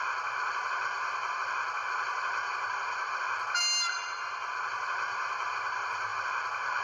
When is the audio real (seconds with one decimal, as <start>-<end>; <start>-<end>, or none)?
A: 0.0-6.8